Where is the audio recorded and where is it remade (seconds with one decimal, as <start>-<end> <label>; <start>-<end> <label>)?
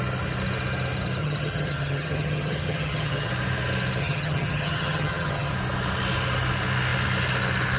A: 0.0-1.2 recorded; 1.2-3.3 remade; 3.3-4.0 recorded; 4.0-5.5 remade; 5.5-7.8 recorded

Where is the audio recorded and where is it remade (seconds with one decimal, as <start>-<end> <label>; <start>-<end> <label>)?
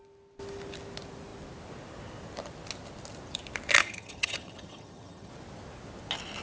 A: 0.0-3.8 recorded; 3.8-5.3 remade; 5.3-6.4 recorded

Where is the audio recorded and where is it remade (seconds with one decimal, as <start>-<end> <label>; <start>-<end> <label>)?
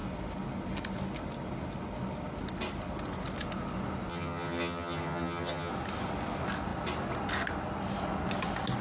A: 0.0-4.1 recorded; 4.1-5.7 remade; 5.7-8.8 recorded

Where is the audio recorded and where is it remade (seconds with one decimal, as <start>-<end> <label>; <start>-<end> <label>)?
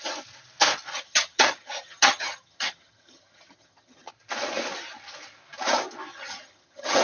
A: 0.0-0.9 recorded; 0.9-4.1 remade; 4.1-6.1 recorded; 6.1-7.0 remade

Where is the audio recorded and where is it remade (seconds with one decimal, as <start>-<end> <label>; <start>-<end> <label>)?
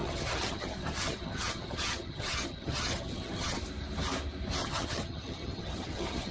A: 0.0-3.6 remade; 3.6-4.6 recorded; 4.6-6.3 remade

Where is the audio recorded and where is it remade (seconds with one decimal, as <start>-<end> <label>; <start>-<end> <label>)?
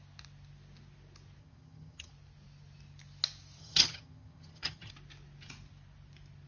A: 0.0-1.4 recorded; 1.4-2.1 remade; 2.1-3.6 recorded; 3.6-4.9 remade; 4.9-6.5 recorded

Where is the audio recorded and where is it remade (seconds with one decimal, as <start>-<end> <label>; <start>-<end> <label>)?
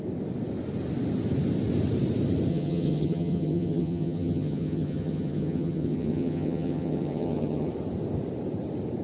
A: 0.0-2.5 recorded; 2.5-7.7 remade; 7.7-9.0 recorded